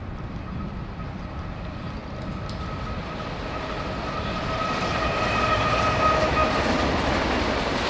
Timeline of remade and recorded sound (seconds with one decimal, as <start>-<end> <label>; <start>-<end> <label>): 0.0-7.9 recorded